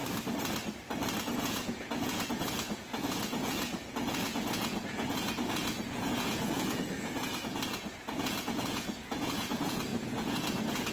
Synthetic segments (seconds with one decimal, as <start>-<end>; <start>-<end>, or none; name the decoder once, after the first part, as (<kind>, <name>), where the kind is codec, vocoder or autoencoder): 1.2-10.9 (vocoder, Vocos)